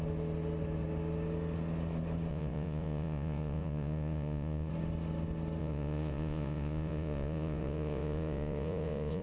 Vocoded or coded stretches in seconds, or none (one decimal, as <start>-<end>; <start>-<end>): 2.3-4.7; 5.6-9.2